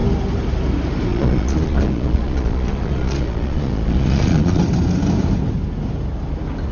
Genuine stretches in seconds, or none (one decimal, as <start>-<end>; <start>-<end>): 0.0-1.1; 4.6-6.7